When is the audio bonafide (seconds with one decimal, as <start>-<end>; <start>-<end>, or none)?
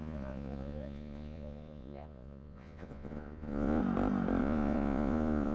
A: 3.8-4.4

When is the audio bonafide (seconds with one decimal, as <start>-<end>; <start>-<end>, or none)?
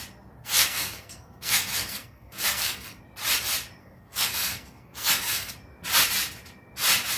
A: 0.0-0.4; 3.0-3.8; 5.5-7.2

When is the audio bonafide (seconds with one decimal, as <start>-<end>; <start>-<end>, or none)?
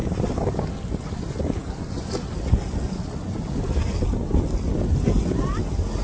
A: 0.0-6.0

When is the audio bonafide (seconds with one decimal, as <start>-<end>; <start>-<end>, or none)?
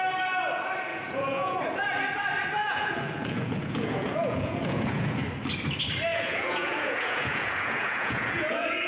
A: 0.0-0.9; 1.6-2.6; 5.2-6.1